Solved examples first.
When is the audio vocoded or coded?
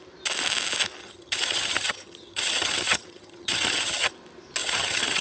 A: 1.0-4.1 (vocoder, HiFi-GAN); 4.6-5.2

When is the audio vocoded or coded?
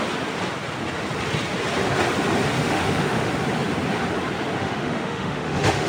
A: 2.6-3.3 (autoencoder, DAC-VAE); 4.6-5.9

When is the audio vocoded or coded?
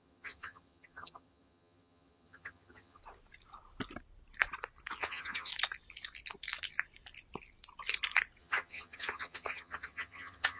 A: 0.0-3.0 (vocoder, HiFi-GAN); 5.0-5.5; 8.4-10.6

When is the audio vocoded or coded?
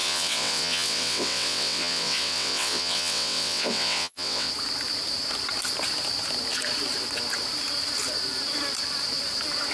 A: 0.0-4.5 (vocoder, WaveNeXt)